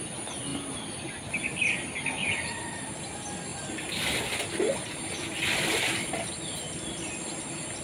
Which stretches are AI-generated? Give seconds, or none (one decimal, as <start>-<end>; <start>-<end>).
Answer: none